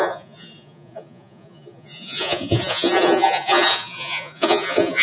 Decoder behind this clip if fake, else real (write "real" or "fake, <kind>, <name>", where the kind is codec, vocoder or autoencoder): fake, vocoder, Vocos